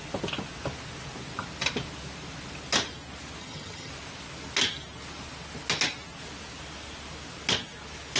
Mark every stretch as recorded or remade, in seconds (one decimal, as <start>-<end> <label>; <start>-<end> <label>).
0.0-3.4 recorded; 3.4-3.9 remade; 3.9-8.2 recorded